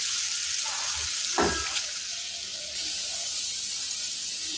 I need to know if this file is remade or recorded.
recorded